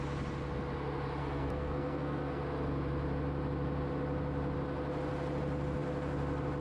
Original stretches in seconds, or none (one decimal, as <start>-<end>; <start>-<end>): 0.0-1.2; 2.4-6.6